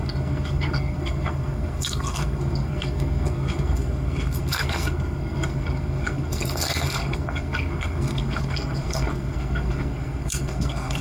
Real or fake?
fake